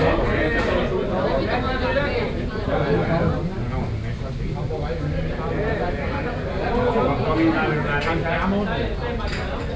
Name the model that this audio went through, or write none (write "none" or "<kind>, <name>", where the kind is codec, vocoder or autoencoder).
none